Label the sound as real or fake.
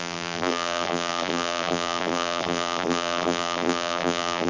fake